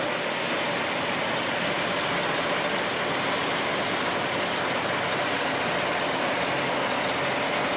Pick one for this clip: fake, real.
real